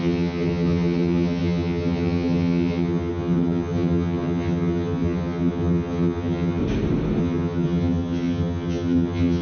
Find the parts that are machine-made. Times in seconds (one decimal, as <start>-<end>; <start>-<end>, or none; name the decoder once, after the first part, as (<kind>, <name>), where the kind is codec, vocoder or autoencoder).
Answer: 0.0-6.6 (vocoder, HiFi-GAN); 7.2-9.4